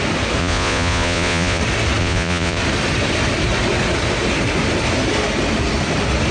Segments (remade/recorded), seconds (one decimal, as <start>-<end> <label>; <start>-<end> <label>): 0.0-0.4 recorded; 0.4-1.6 remade; 1.6-2.0 recorded; 2.0-2.6 remade; 2.6-6.3 recorded